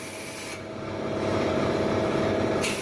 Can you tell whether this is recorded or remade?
remade